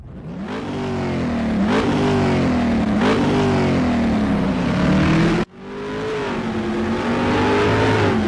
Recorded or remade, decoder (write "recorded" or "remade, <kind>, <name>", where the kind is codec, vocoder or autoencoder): recorded